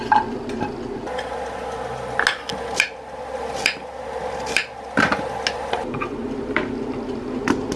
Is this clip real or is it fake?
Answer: real